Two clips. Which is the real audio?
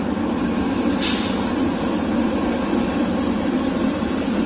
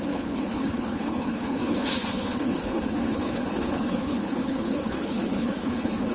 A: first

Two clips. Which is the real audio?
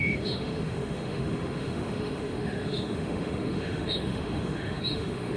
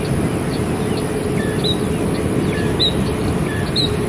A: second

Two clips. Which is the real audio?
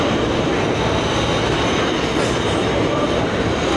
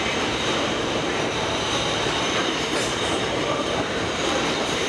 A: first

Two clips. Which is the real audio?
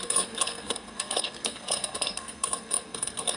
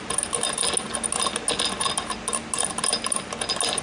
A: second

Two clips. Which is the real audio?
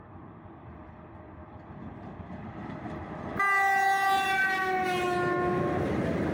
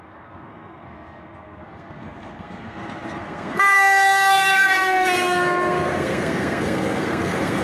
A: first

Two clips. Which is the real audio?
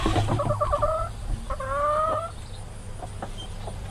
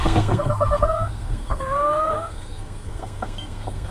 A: first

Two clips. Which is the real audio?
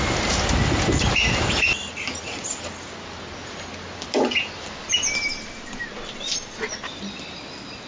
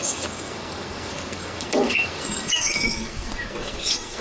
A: first